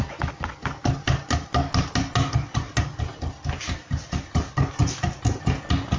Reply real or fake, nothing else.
real